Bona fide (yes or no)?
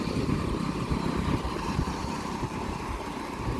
no